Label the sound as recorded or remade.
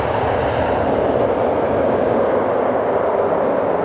recorded